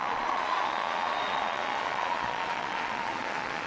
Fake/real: fake